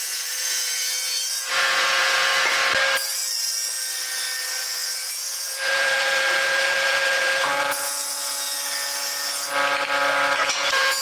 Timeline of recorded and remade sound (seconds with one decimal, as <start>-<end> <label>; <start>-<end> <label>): 0.0-2.6 remade; 2.6-4.6 recorded; 4.6-9.2 remade; 9.2-10.5 recorded; 10.5-11.0 remade